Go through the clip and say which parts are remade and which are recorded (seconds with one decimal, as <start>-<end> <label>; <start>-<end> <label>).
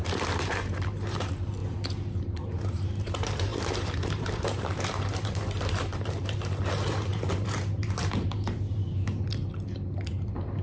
0.0-1.6 remade; 1.6-2.2 recorded; 2.2-10.6 remade